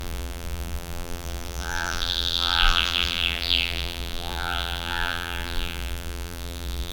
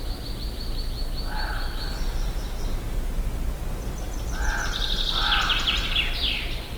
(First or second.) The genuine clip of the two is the second